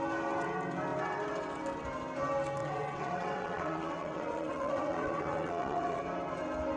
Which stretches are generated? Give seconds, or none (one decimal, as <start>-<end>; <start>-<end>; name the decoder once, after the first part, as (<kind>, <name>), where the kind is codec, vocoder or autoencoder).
2.6-6.0 (vocoder, WaveNeXt)